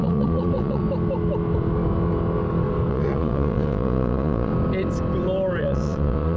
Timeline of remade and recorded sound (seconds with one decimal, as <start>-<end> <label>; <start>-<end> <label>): 0.0-0.8 remade; 0.8-2.9 recorded; 2.9-4.5 remade; 4.5-5.6 recorded; 5.6-6.4 remade